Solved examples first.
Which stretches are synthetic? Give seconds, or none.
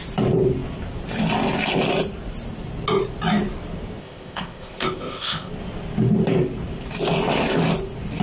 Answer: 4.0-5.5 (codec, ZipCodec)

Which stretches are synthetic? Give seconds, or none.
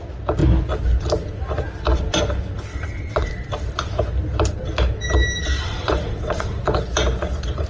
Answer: 2.7-3.3 (vocoder, WaveNeXt); 5.4-6.6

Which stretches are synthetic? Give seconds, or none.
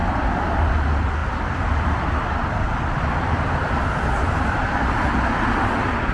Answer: 0.0-0.7 (vocoder, BigVGAN v2); 1.2-4.9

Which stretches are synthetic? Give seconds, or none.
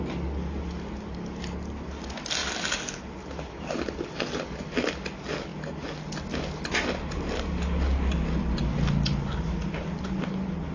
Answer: none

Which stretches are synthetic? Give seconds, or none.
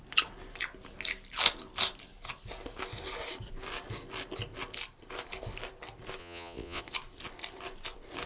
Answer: 6.2-6.8 (vocoder, Vocos)